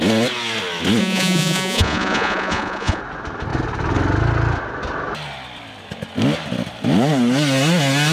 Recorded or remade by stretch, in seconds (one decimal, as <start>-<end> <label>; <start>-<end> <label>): 0.0-1.0 recorded; 1.0-3.0 remade; 3.0-8.1 recorded